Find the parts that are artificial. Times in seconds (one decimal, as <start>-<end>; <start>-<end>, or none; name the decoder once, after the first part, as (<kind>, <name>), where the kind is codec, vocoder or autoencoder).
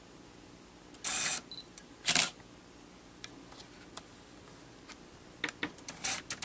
none